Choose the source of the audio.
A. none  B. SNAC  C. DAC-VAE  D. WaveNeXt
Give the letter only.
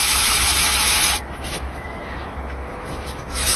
C